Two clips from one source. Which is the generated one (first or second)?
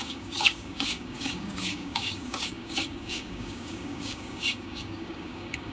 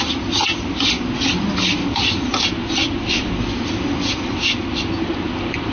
first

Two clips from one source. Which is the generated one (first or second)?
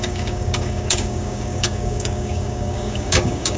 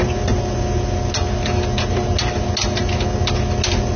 first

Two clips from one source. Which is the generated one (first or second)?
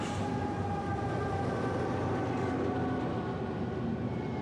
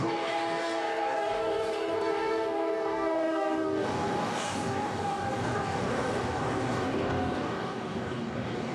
second